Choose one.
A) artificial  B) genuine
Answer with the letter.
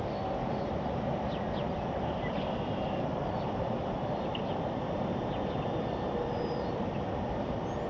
A